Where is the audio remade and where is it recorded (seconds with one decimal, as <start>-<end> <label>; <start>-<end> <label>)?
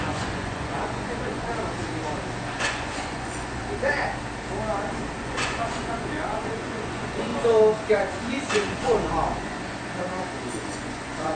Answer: 0.0-1.5 remade; 1.5-2.5 recorded; 2.5-3.6 remade; 3.6-5.2 recorded; 5.2-7.3 remade; 7.3-7.9 recorded; 7.9-11.4 remade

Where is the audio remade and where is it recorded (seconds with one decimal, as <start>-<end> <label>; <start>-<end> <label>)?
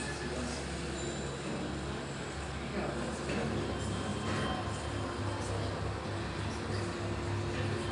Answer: 0.0-7.9 recorded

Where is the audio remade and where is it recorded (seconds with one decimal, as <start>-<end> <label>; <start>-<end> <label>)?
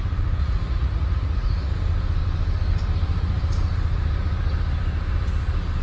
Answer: 0.0-0.4 recorded; 0.4-1.7 remade; 1.7-5.8 recorded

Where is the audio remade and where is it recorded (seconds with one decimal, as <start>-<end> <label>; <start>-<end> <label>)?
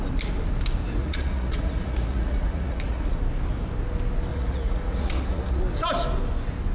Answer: 0.0-1.0 recorded; 1.0-3.2 remade; 3.2-4.3 recorded; 4.3-5.6 remade; 5.6-6.7 recorded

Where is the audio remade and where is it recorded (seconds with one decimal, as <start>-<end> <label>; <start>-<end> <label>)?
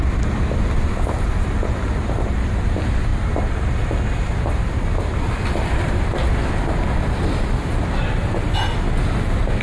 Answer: 0.0-9.6 recorded